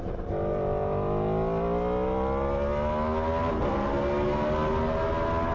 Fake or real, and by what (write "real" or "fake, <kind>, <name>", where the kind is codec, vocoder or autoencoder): real